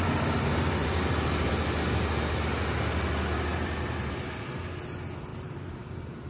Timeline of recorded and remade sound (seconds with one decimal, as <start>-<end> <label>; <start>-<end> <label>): 0.0-0.8 recorded; 0.8-1.5 remade; 1.5-3.5 recorded; 3.5-4.6 remade; 4.6-5.3 recorded; 5.3-6.3 remade